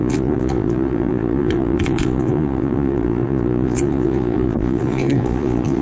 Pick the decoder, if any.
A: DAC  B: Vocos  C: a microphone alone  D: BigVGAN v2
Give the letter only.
B